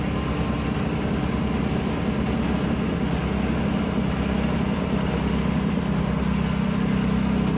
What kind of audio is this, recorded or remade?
recorded